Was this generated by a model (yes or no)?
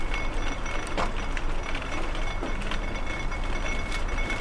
no